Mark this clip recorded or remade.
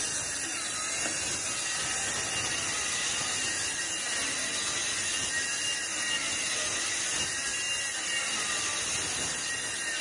recorded